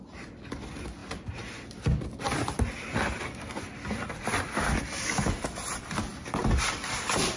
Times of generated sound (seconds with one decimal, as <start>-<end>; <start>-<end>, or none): none